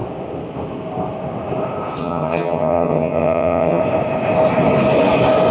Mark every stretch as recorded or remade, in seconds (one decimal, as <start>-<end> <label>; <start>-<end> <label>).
0.0-2.0 recorded; 2.0-3.8 remade; 3.8-5.5 recorded